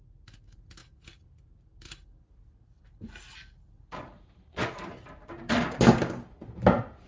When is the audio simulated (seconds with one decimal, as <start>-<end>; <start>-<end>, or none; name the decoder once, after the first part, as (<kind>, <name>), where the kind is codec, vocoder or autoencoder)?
none